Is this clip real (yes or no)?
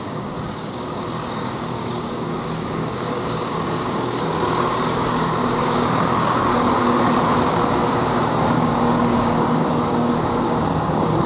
no